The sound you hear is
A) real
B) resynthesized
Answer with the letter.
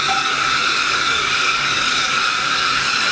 B